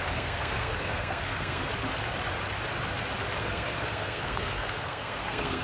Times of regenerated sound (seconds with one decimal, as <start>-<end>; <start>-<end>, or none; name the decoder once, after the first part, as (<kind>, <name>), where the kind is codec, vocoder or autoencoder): 0.0-1.6 (codec, SNAC); 3.4-5.6